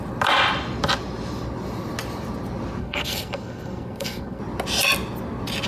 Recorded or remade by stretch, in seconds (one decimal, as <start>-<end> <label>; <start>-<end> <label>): 0.0-2.8 recorded; 2.8-4.4 remade; 4.4-5.7 recorded